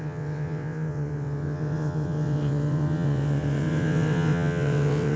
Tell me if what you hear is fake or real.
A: fake